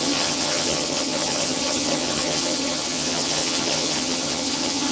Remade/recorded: remade